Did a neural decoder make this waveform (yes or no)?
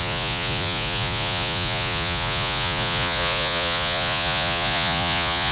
yes